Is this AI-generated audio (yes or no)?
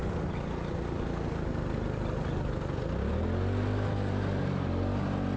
no